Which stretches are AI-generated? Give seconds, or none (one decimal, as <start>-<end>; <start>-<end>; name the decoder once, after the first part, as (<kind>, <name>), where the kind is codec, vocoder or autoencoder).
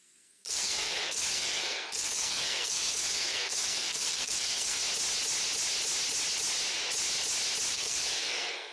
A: 0.0-4.8 (codec, SNAC); 7.7-8.7